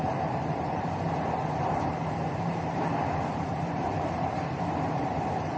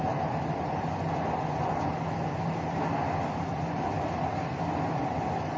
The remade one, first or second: first